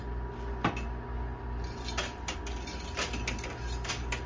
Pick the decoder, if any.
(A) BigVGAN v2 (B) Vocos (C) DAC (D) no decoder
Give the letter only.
D